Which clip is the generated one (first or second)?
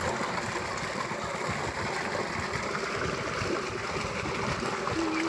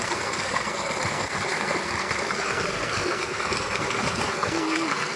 second